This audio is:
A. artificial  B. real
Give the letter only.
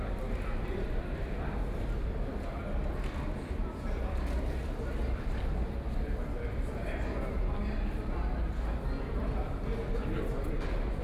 B